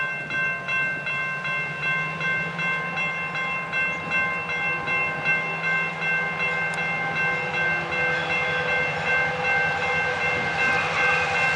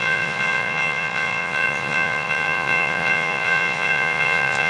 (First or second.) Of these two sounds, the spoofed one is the second